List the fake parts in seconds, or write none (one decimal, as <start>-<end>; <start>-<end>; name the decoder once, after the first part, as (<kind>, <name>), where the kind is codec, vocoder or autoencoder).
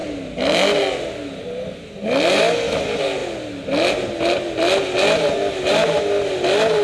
none